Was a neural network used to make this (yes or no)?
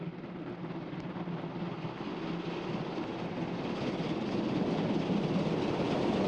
no